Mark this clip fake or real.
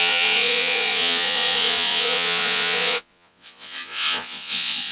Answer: fake